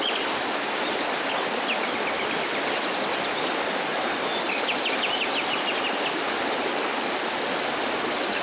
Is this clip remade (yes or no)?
no